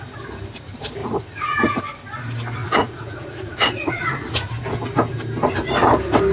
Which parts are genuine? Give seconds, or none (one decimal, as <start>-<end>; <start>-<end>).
0.0-1.0; 1.8-2.6; 4.1-6.3